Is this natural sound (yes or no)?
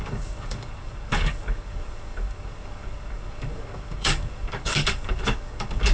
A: no